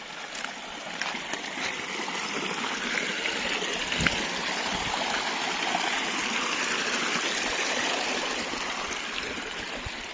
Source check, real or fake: real